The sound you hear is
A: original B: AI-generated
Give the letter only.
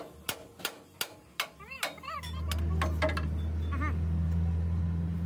A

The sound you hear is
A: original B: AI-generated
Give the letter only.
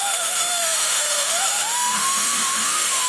B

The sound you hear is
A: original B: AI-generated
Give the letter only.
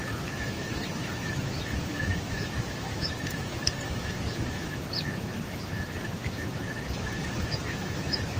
B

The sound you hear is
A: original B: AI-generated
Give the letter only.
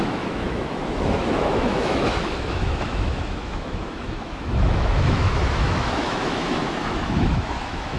B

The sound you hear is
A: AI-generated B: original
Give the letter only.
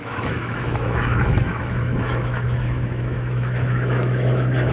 A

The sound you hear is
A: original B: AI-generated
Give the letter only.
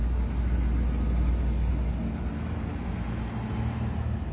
A